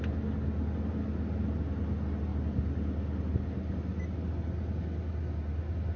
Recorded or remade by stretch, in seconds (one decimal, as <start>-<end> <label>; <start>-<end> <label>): 0.0-6.0 recorded